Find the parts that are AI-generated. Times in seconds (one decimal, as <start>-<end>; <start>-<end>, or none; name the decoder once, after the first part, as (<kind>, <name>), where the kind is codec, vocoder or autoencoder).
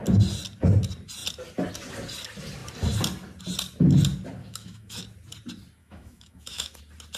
4.4-5.0 (autoencoder, DAC-VAE); 5.8-6.8